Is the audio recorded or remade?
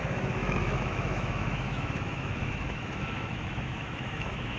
remade